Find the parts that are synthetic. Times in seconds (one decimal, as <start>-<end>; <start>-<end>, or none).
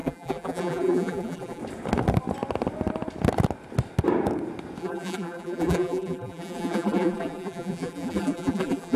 0.0-1.6; 4.8-9.0